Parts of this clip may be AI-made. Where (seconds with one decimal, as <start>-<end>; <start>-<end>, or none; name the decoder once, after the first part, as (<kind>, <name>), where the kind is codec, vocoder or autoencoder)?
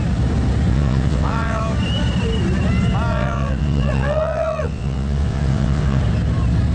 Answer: 0.7-1.6 (vocoder, WaveNeXt); 3.1-6.0